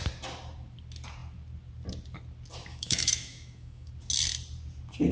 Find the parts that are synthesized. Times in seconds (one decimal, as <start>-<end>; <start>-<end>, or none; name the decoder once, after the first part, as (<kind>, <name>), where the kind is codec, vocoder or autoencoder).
2.7-3.9 (autoencoder, DAC-VAE)